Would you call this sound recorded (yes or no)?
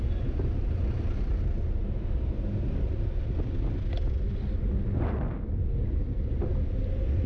yes